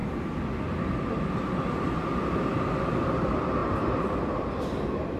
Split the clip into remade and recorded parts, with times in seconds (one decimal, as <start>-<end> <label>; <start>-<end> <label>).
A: 0.0-5.2 recorded